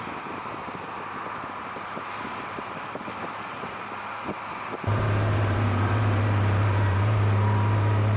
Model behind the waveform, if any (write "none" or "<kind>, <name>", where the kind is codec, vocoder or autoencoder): vocoder, BigVGAN v2